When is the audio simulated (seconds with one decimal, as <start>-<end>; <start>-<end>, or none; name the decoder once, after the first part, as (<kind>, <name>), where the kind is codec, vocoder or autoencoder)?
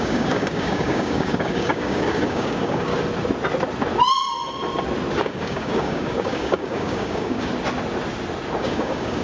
0.0-2.9 (codec, DAC); 5.2-7.5; 8.6-9.2